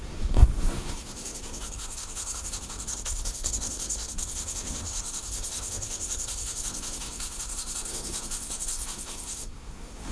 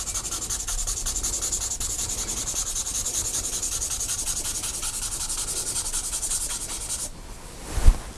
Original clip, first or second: second